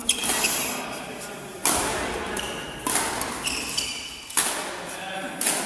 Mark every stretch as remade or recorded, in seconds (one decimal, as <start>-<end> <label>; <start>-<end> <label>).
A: 0.0-2.2 remade; 2.2-5.7 recorded